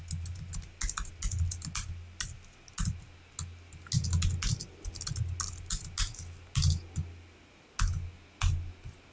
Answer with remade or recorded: recorded